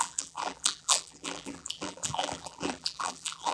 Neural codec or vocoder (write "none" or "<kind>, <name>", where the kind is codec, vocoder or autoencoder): vocoder, BigVGAN v2